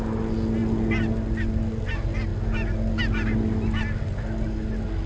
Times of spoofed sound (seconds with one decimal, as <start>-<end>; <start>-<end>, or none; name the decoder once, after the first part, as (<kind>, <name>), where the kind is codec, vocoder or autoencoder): none